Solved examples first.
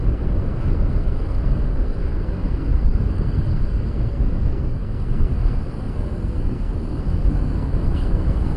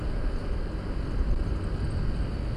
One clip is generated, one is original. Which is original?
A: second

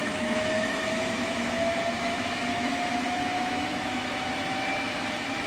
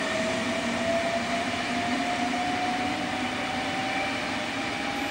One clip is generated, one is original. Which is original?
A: second